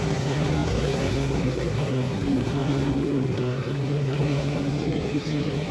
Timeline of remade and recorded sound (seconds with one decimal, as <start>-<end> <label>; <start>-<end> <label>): 0.0-5.7 remade